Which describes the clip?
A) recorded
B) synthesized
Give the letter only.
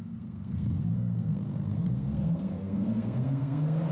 B